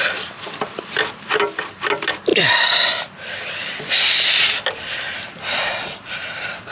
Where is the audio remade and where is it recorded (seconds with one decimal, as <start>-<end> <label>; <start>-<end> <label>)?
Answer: 0.0-6.7 recorded